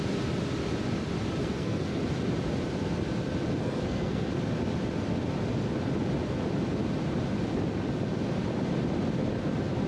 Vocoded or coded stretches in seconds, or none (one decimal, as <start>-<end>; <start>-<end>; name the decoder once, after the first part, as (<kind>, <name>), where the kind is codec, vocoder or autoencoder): 1.4-2.0 (codec, SNAC); 3.6-4.3